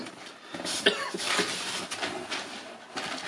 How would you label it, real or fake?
real